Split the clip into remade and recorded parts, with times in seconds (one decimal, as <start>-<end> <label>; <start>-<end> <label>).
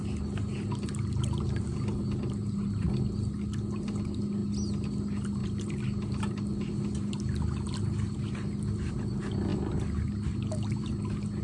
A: 0.0-11.4 recorded